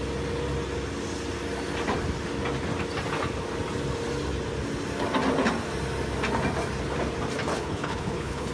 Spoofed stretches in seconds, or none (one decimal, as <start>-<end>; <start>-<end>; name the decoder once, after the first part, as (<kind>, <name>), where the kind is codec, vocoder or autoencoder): 7.5-8.5 (codec, HILCodec)